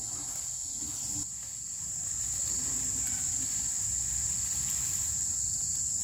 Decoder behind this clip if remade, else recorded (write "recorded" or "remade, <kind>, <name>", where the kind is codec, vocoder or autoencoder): recorded